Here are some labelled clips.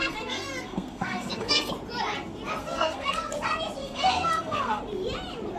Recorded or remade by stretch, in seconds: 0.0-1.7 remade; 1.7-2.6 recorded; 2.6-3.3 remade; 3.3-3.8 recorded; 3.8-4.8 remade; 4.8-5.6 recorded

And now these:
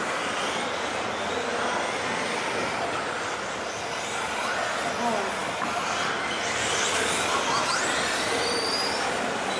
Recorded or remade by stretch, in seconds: 0.0-9.6 recorded

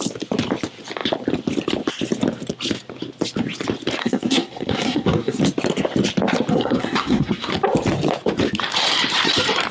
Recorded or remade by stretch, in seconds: 0.0-4.0 recorded; 4.0-5.4 remade; 5.4-6.5 recorded; 6.5-7.5 remade; 7.5-9.7 recorded

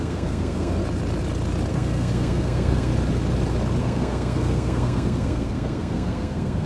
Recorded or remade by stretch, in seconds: 0.0-0.8 remade; 0.8-1.7 recorded; 1.7-2.9 remade; 2.9-3.8 recorded; 3.8-6.7 remade

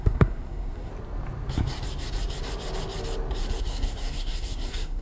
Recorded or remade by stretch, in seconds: 0.0-0.9 remade; 0.9-3.6 recorded; 3.6-5.0 remade

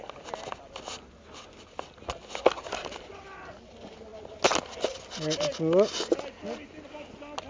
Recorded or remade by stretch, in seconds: 0.0-7.5 recorded

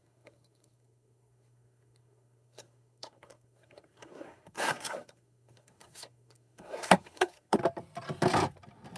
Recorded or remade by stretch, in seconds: 0.0-7.6 remade; 7.6-9.0 recorded

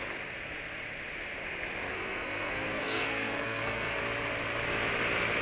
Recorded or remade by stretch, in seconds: 0.0-1.9 recorded; 1.9-4.0 remade; 4.0-5.4 recorded